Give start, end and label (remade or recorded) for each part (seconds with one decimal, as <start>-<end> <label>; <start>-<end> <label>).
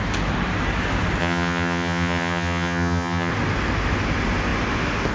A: 0.0-1.2 recorded; 1.2-3.3 remade; 3.3-5.1 recorded